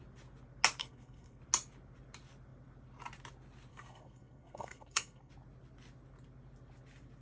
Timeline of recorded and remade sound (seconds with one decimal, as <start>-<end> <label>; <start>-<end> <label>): 0.0-0.8 recorded; 0.8-1.4 remade; 1.4-3.7 recorded; 3.7-5.3 remade; 5.3-7.2 recorded